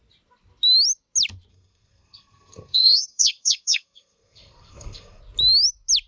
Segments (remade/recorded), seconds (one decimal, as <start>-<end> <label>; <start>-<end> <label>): 0.0-1.5 recorded; 1.5-5.2 remade; 5.2-6.1 recorded